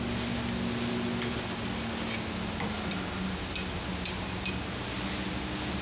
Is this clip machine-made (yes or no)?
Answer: no